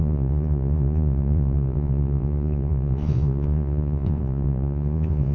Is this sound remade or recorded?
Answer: remade